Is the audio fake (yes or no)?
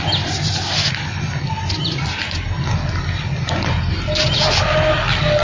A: no